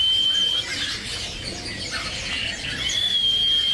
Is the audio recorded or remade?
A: recorded